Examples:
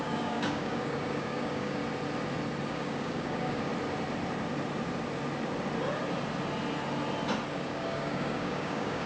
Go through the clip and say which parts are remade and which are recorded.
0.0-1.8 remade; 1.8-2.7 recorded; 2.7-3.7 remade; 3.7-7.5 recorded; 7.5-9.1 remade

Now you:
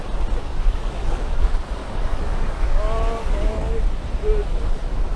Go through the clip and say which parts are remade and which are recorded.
0.0-0.4 recorded; 0.4-1.4 remade; 1.4-1.8 recorded; 1.8-3.7 remade; 3.7-5.2 recorded

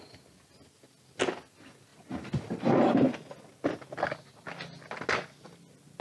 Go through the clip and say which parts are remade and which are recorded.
0.0-6.0 recorded

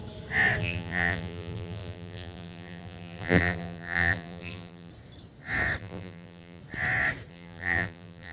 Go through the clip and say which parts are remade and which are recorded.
0.0-0.6 recorded; 0.6-4.9 remade; 4.9-5.8 recorded; 5.8-6.6 remade; 6.6-7.3 recorded; 7.3-8.3 remade

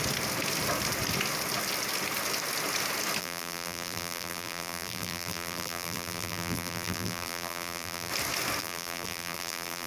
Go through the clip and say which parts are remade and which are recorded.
0.0-3.2 recorded; 3.2-8.1 remade; 8.1-8.6 recorded; 8.6-9.9 remade

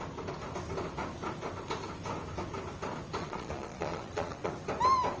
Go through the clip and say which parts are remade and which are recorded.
0.0-3.2 recorded; 3.2-4.5 remade; 4.5-5.2 recorded

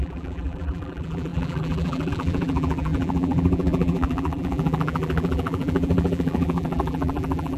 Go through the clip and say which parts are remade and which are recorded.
0.0-7.6 remade